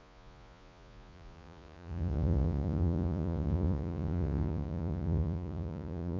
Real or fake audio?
fake